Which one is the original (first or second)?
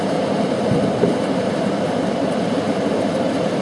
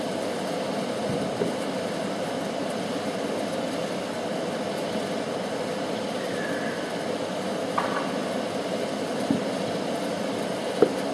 second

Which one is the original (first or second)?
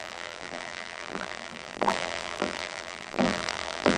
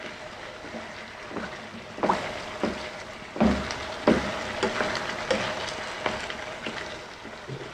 second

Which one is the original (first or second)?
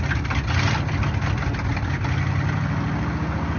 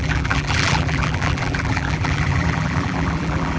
first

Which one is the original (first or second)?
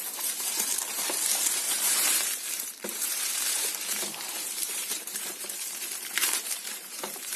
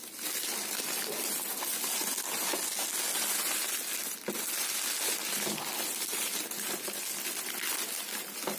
second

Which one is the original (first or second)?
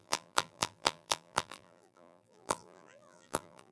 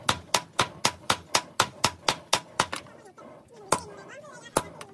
second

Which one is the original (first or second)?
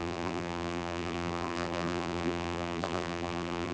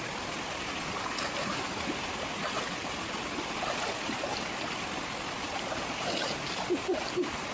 second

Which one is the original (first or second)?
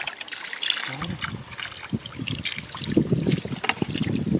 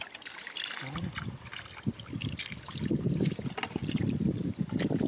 first